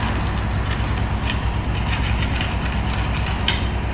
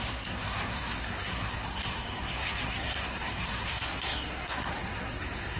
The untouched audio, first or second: first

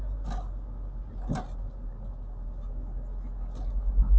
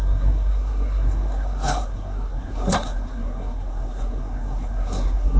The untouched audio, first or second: first